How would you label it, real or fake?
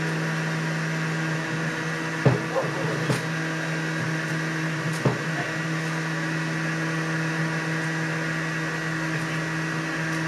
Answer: real